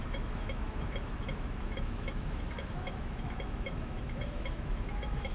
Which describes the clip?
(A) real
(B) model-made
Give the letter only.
B